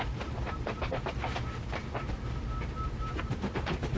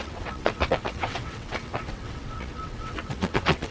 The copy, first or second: second